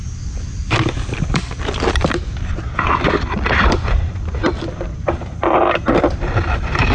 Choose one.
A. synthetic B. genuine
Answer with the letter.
A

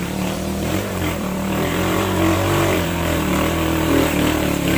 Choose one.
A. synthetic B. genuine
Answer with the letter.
A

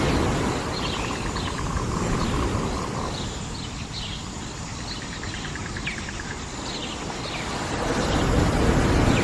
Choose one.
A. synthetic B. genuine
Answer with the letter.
B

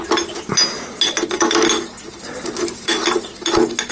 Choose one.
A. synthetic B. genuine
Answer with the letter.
B